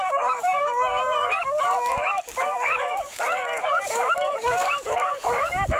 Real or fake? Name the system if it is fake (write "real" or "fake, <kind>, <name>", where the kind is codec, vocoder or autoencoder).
fake, codec, DAC